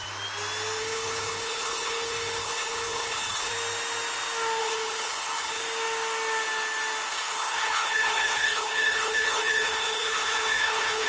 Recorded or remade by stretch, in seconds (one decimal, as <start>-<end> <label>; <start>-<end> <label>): 0.0-0.8 recorded; 0.8-3.5 remade; 3.5-4.6 recorded; 4.6-5.6 remade; 5.6-7.1 recorded; 7.1-11.1 remade